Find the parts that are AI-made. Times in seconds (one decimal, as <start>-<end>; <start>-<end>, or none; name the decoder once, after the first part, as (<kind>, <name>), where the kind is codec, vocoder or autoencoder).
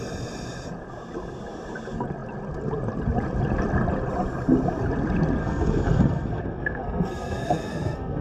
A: 5.4-8.2 (codec, SNAC)